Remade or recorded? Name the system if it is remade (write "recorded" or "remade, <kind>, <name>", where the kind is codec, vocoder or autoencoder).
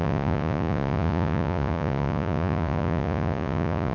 remade, vocoder, Vocos